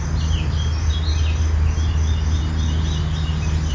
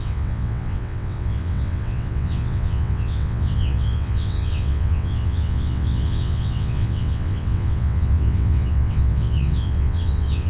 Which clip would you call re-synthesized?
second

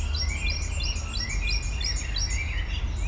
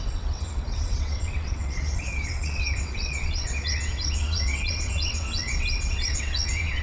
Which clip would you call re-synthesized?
second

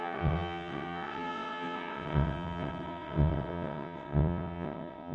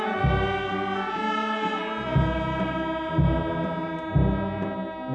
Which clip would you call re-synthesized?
first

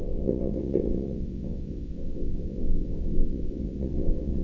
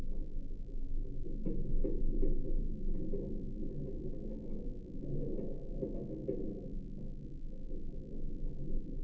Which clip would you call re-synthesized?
first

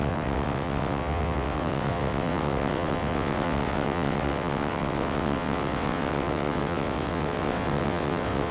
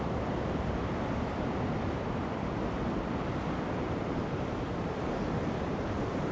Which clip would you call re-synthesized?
first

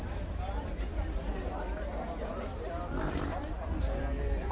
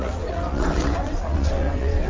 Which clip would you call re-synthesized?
second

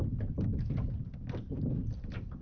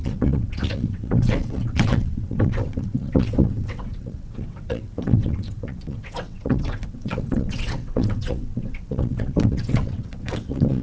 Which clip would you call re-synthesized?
second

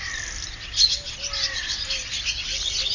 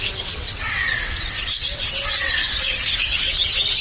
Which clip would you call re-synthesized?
second